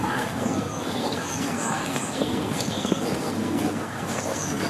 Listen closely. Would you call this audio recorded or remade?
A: remade